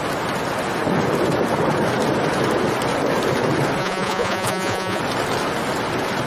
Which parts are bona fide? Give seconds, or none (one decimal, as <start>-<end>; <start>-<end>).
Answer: 0.0-3.8; 5.0-6.3